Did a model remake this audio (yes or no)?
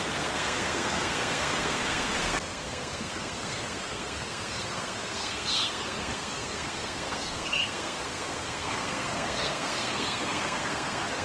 yes